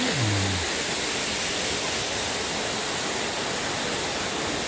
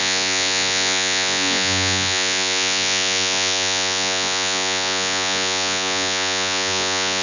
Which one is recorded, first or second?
first